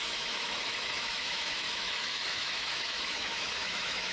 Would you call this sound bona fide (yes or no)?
no